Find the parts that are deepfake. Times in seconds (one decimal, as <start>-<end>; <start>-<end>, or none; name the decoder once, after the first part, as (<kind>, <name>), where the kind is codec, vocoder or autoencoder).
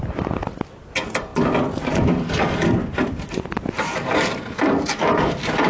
none